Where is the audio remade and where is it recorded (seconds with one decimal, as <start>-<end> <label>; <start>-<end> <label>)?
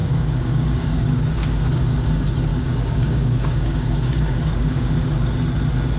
0.0-1.7 remade; 1.7-2.5 recorded; 2.5-5.3 remade; 5.3-6.0 recorded